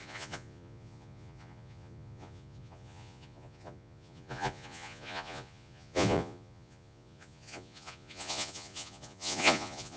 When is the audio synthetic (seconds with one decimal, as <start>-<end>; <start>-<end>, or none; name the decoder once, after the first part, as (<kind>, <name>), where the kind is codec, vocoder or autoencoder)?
0.0-10.0 (vocoder, Vocos)